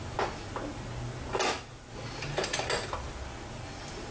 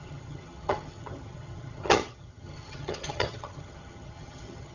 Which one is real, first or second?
first